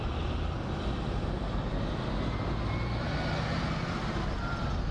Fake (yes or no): no